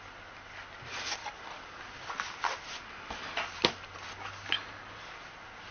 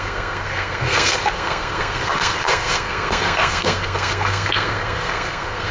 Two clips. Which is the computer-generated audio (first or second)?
second